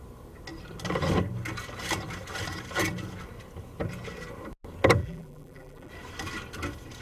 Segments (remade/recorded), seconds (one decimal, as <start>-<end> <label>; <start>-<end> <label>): 0.0-5.0 recorded; 5.0-5.9 remade; 5.9-7.0 recorded